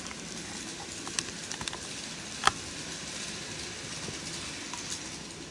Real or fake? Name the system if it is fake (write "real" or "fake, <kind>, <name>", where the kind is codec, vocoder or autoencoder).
real